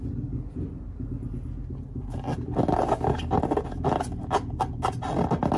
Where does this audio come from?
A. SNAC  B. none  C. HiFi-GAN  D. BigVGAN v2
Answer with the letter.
B